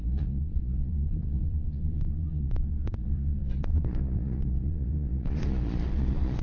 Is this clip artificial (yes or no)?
yes